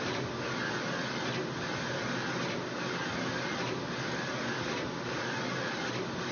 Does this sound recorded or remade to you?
recorded